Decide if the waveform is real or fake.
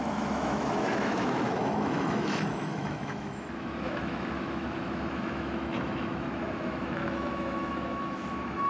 fake